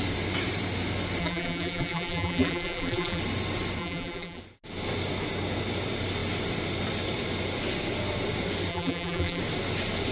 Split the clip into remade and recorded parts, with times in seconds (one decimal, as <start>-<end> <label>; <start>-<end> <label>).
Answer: 0.0-1.2 recorded; 1.2-3.2 remade; 3.2-3.8 recorded; 3.8-4.4 remade; 4.4-8.7 recorded; 8.7-9.4 remade; 9.4-10.1 recorded